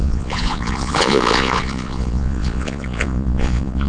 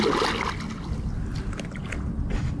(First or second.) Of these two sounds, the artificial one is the first